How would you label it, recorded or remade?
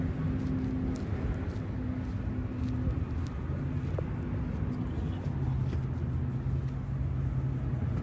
recorded